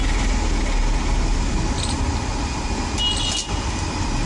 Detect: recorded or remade recorded